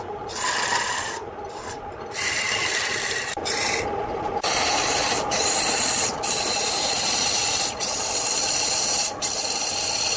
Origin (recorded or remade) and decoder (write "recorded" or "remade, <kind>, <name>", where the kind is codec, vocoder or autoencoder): remade, vocoder, BigVGAN v2